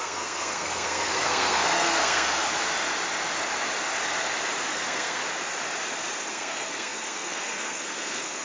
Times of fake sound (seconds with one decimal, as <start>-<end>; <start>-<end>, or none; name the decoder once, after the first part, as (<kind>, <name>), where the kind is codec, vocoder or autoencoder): 0.0-2.5 (codec, SNAC); 4.7-5.2; 6.3-8.4